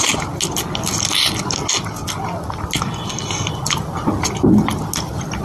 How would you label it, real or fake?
real